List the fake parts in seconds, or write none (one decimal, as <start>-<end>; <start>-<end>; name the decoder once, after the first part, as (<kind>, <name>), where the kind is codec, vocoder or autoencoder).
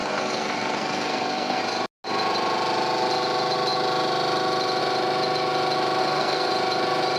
0.0-1.6 (codec, SNAC); 6.0-6.5